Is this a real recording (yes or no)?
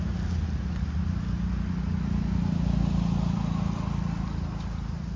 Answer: yes